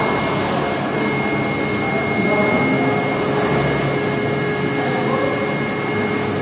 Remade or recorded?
recorded